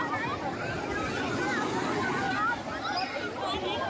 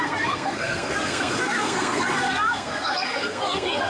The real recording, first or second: first